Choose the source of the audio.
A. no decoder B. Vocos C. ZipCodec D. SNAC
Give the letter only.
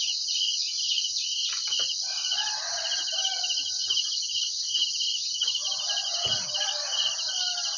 A